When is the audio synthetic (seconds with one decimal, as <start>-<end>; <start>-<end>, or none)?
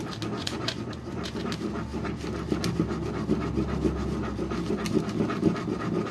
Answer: 0.4-1.4